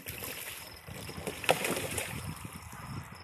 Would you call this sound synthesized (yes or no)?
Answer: no